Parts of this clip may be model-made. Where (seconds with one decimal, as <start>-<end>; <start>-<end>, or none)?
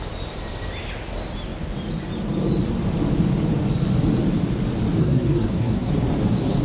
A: 5.0-5.9